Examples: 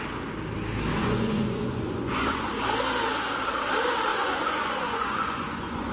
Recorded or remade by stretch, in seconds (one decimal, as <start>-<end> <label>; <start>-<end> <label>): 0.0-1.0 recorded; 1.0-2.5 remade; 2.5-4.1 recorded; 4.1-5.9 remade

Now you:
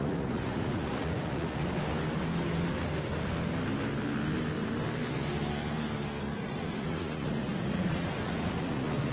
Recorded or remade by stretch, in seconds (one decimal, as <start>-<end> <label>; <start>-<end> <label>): 0.0-1.6 remade; 1.6-6.2 recorded; 6.2-9.1 remade

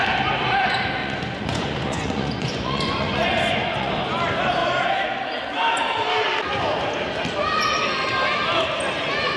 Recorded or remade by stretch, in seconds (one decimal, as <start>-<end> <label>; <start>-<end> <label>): 0.0-1.0 recorded; 1.0-3.9 remade; 3.9-9.4 recorded